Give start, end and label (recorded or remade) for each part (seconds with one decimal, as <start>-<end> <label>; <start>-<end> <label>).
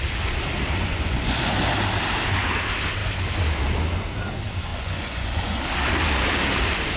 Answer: 0.0-0.8 recorded; 0.8-1.5 remade; 1.5-4.7 recorded; 4.7-5.6 remade; 5.6-7.0 recorded